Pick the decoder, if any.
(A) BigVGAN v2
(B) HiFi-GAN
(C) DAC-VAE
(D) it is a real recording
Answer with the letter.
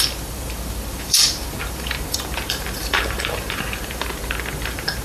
A